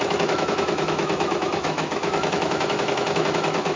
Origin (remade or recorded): remade